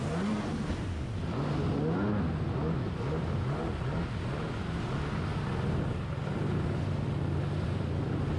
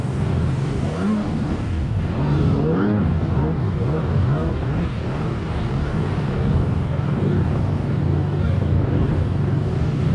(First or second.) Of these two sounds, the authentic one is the first